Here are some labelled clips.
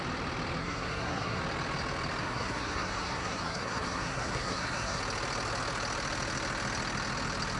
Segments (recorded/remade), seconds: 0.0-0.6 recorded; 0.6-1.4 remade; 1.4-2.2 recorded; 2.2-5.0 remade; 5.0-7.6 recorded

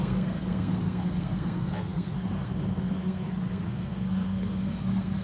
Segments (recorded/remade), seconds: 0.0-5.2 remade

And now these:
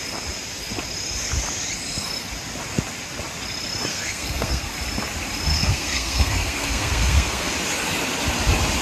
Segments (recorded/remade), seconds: 0.0-3.9 recorded; 3.9-4.7 remade; 4.7-5.5 recorded; 5.5-7.5 remade; 7.5-8.8 recorded

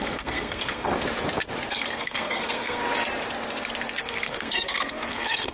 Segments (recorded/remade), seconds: 0.0-0.9 remade; 0.9-1.7 recorded; 1.7-2.8 remade; 2.8-4.0 recorded; 4.0-5.5 remade

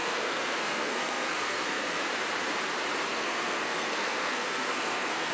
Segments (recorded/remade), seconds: 0.0-2.0 remade; 2.0-3.1 recorded; 3.1-5.3 remade